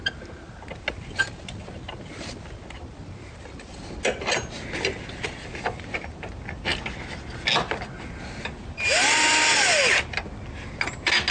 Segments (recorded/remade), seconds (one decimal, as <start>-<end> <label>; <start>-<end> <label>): 0.0-11.3 recorded